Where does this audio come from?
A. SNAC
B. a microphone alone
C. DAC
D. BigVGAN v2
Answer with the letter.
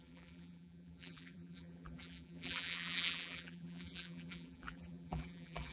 D